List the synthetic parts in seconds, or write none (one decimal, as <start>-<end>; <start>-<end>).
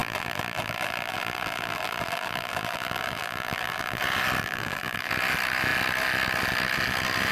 0.0-4.0; 4.4-5.1